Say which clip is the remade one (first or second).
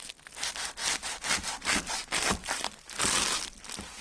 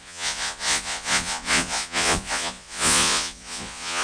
second